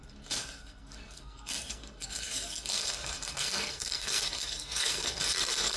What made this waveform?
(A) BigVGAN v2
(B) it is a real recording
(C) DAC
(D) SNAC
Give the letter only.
D